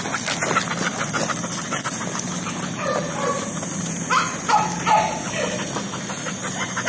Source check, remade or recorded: recorded